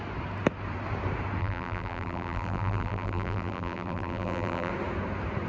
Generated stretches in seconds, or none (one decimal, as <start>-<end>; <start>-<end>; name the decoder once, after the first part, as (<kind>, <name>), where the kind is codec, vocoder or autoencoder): 1.4-4.7 (vocoder, BigVGAN v2)